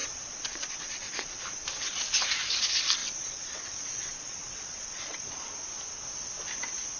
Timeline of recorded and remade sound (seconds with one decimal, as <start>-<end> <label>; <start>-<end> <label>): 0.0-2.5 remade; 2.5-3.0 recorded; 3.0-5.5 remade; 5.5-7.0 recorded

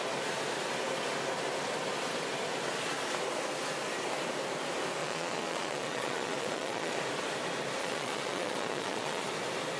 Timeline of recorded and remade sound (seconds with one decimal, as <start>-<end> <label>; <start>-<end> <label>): 0.0-5.0 recorded; 5.0-7.0 remade; 7.0-7.8 recorded; 7.8-9.3 remade; 9.3-9.8 recorded

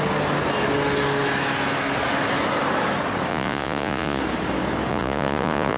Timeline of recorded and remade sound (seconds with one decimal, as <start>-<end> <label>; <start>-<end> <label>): 0.0-3.3 recorded; 3.3-4.2 remade; 4.2-4.9 recorded; 4.9-5.8 remade